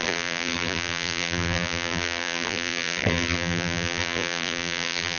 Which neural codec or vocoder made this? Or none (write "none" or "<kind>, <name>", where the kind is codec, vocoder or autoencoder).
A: vocoder, BigVGAN v2